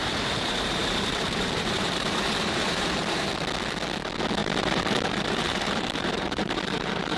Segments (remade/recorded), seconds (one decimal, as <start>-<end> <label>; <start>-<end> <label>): 0.0-3.3 remade; 3.3-4.4 recorded; 4.4-7.2 remade